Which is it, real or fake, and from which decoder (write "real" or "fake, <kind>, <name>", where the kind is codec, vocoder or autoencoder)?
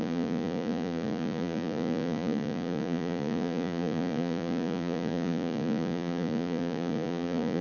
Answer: fake, vocoder, Vocos